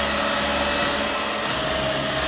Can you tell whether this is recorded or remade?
recorded